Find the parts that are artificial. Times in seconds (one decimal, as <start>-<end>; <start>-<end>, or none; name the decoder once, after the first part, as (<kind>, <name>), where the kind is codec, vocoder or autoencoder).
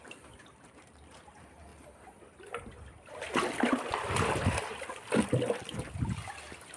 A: none